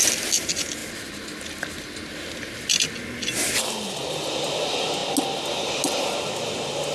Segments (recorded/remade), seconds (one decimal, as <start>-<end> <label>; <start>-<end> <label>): 0.0-6.9 recorded